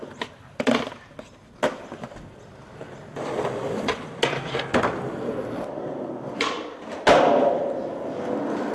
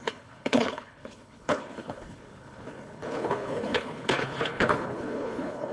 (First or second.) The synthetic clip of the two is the second